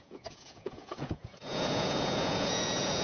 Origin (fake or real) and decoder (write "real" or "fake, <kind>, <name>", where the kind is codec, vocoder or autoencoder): fake, vocoder, Vocos